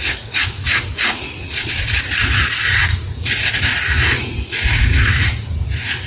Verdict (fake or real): fake